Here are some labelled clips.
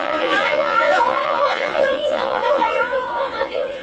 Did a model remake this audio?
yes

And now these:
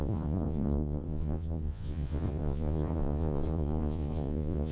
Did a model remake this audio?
yes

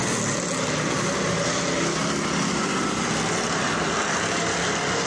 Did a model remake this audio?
no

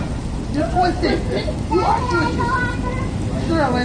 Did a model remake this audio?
no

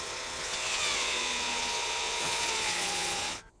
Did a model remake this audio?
yes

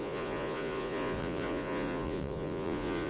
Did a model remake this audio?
yes